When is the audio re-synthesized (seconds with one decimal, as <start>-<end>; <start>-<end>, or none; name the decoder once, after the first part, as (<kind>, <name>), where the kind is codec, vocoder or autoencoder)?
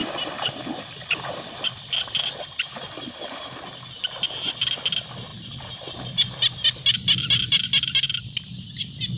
none